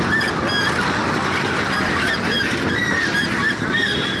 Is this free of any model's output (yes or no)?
yes